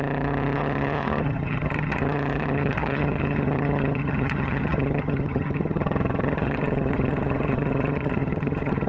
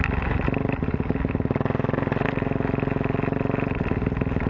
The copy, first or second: first